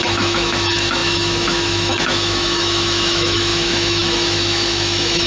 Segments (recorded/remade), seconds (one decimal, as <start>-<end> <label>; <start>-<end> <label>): 0.0-5.3 remade